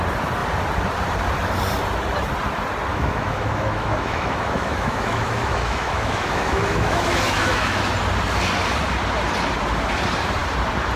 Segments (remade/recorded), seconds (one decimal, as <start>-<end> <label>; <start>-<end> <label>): 0.0-2.9 recorded; 2.9-7.9 remade; 7.9-11.0 recorded